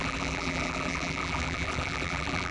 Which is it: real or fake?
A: fake